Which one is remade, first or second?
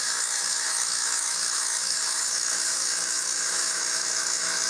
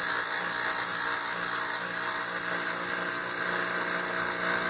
first